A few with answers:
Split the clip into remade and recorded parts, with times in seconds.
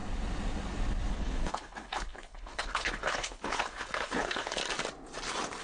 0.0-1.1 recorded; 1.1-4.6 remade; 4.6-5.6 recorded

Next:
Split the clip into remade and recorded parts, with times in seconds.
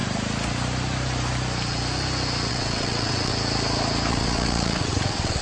0.0-2.5 recorded; 2.5-3.3 remade; 3.3-4.1 recorded; 4.1-5.4 remade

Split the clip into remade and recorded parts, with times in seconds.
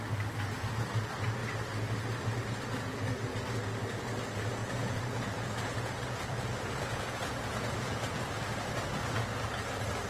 0.0-4.6 recorded; 4.6-8.2 remade; 8.2-10.1 recorded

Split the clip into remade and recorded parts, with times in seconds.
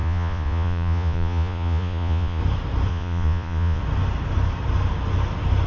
0.0-2.4 remade; 2.4-2.9 recorded; 2.9-3.8 remade; 3.8-5.7 recorded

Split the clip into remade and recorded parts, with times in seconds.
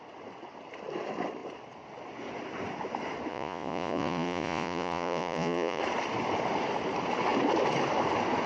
0.0-3.3 recorded; 3.3-5.8 remade; 5.8-8.5 recorded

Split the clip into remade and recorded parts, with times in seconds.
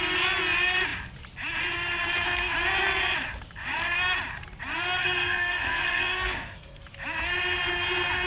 0.0-5.0 recorded; 5.0-6.8 remade; 6.8-8.3 recorded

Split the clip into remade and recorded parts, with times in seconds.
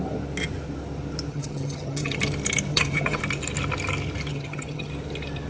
0.0-1.3 recorded; 1.3-2.2 remade; 2.2-2.7 recorded; 2.7-3.2 remade; 3.2-4.3 recorded; 4.3-4.9 remade; 4.9-5.5 recorded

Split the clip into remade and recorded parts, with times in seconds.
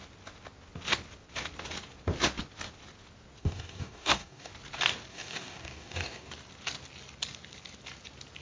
0.0-3.4 recorded; 3.4-4.5 remade; 4.5-5.1 recorded; 5.1-6.3 remade; 6.3-8.4 recorded